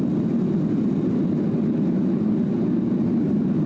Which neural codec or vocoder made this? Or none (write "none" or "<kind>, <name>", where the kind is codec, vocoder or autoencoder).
none